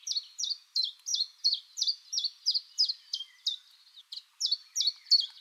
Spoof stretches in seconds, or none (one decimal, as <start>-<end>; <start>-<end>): none